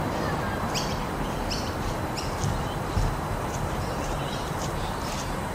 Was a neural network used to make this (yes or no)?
yes